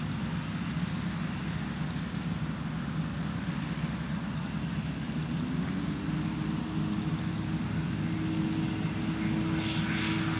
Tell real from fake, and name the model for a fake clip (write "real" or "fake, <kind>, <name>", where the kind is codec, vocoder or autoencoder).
real